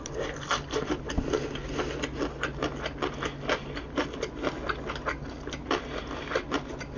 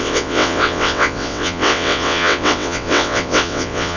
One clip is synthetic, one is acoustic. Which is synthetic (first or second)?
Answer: second